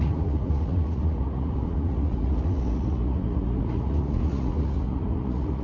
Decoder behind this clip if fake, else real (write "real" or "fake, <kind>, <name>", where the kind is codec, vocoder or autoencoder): fake, vocoder, Vocos